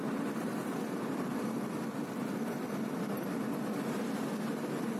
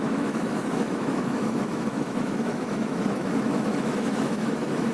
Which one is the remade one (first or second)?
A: second